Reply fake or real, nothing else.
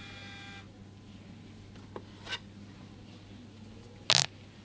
real